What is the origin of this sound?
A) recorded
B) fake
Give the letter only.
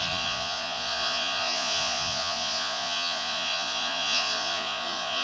B